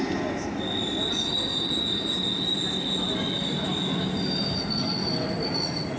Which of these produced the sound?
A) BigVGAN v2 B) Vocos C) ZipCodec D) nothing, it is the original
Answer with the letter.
D